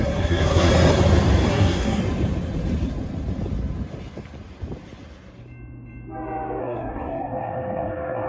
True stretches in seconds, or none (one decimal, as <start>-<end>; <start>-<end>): 0.7-1.5; 2.0-6.6